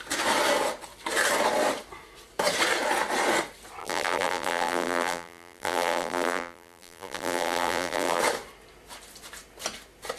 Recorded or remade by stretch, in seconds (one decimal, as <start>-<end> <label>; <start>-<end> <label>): 0.0-3.8 recorded; 3.8-8.2 remade; 8.2-10.2 recorded